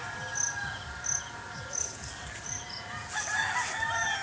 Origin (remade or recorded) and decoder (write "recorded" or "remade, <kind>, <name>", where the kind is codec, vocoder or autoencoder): recorded